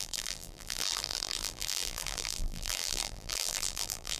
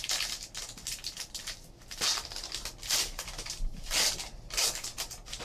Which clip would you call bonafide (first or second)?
second